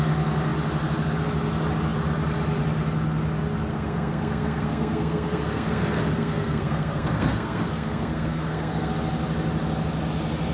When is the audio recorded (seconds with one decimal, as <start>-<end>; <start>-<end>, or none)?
0.0-3.7; 8.9-10.5

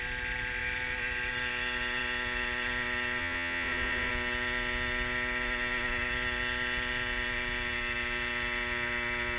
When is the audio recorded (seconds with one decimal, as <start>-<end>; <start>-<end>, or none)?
0.0-3.2; 4.1-9.4

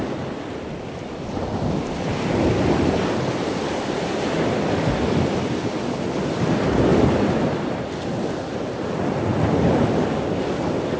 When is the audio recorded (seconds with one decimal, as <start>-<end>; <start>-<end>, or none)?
0.0-11.0

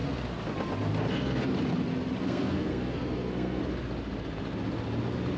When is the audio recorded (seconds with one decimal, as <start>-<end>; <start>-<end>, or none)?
0.0-1.1; 1.5-2.2; 3.6-5.4

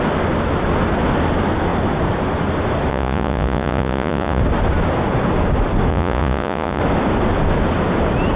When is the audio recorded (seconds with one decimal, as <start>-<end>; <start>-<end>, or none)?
0.0-2.9; 4.4-5.9; 6.8-8.4

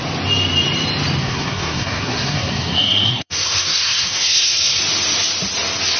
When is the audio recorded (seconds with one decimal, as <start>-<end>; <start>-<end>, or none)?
0.0-1.2; 4.8-6.0